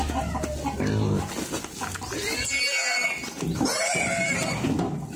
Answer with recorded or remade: recorded